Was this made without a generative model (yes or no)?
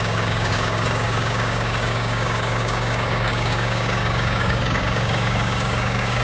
no